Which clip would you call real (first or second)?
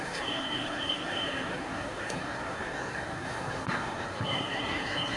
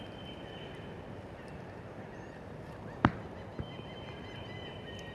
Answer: second